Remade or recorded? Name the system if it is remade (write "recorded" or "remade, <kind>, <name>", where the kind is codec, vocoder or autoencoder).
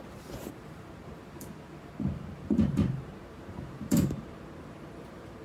remade, vocoder, BigVGAN v2